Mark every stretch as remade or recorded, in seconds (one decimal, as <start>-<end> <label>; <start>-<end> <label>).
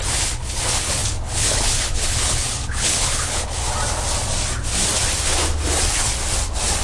0.0-3.6 remade; 3.6-6.8 recorded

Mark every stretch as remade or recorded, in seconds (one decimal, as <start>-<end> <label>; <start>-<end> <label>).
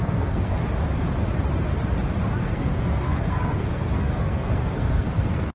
0.0-0.6 remade; 0.6-2.4 recorded; 2.4-5.5 remade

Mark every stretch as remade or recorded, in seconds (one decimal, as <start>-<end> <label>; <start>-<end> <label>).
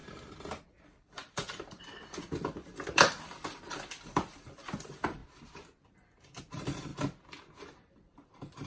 0.0-0.6 recorded; 0.6-5.2 remade; 5.2-6.4 recorded; 6.4-6.9 remade; 6.9-7.9 recorded; 7.9-8.7 remade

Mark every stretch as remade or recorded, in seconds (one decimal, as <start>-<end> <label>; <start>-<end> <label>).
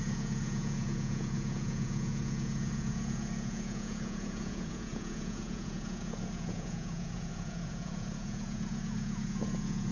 0.0-9.9 remade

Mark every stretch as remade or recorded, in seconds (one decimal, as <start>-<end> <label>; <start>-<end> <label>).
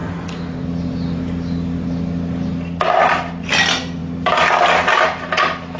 0.0-5.8 recorded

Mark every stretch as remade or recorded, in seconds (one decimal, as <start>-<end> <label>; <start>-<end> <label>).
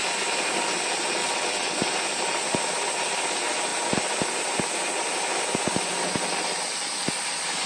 0.0-1.2 recorded; 1.2-1.8 remade; 1.8-7.7 recorded